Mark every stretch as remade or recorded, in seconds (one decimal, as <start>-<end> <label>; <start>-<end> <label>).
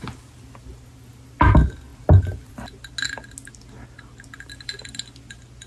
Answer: 0.0-5.7 recorded